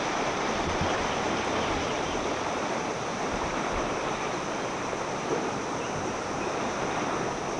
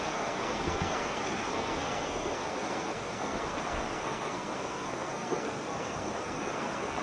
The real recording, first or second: first